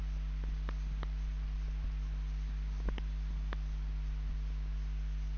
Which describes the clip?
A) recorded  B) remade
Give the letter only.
A